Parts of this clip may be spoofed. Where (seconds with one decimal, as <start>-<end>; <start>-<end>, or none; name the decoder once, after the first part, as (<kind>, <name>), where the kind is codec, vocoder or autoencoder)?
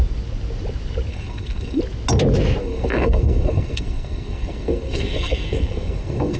1.1-1.8 (codec, SNAC); 2.6-6.4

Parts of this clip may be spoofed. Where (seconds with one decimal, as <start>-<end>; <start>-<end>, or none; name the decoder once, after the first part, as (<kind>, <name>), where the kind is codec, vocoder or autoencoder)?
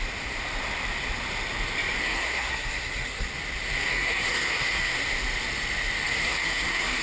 2.0-3.3 (codec, SNAC); 3.9-5.0; 6.1-7.0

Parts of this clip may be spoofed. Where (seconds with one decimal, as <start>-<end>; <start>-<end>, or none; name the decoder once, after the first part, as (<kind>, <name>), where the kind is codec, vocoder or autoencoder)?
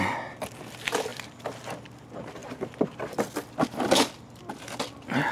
none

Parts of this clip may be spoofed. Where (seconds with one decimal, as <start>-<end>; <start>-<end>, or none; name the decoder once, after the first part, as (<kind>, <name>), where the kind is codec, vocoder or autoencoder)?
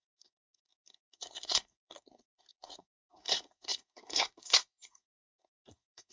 0.0-6.1 (codec, SNAC)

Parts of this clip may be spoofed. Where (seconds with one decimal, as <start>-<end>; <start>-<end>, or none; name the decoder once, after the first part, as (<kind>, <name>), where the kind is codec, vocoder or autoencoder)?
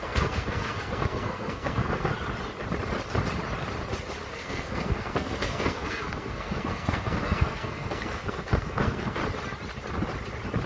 0.0-2.1 (codec, SNAC); 4.3-9.2